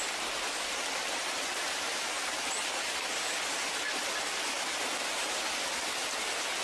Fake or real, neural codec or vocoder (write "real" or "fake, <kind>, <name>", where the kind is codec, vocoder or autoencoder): real